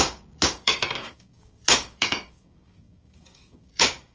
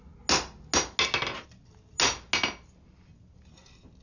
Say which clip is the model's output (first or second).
first